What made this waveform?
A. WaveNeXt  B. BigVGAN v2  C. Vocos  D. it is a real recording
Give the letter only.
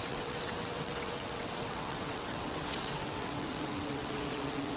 A